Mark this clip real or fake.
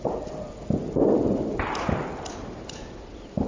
real